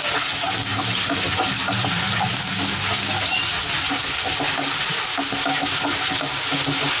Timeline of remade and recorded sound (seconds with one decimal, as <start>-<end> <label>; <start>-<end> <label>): 0.0-7.0 recorded